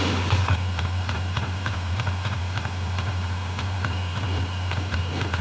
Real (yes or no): no